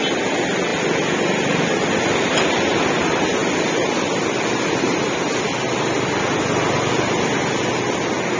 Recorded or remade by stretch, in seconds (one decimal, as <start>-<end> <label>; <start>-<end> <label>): 0.0-8.4 recorded